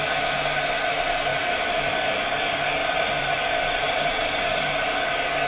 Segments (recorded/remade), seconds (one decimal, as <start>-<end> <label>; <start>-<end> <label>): 0.0-1.3 recorded; 1.3-1.9 remade; 1.9-2.8 recorded; 2.8-4.3 remade; 4.3-5.5 recorded